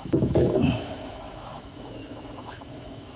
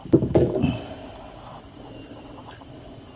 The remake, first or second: first